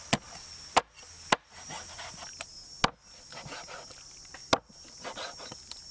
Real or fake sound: real